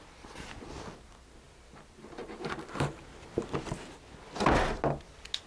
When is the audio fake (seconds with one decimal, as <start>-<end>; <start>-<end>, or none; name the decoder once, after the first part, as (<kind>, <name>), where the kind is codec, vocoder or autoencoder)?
none